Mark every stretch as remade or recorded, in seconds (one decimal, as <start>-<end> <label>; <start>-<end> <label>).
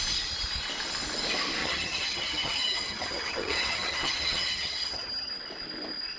0.0-1.6 recorded; 1.6-5.3 remade; 5.3-6.2 recorded